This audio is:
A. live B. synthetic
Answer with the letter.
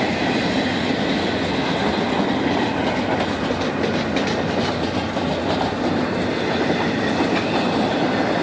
A